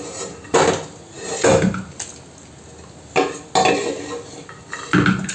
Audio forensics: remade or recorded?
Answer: recorded